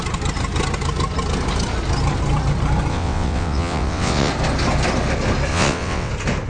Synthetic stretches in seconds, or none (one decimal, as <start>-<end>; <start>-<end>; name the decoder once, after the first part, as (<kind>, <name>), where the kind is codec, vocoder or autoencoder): 2.9-4.3 (vocoder, WaveNeXt); 5.5-6.1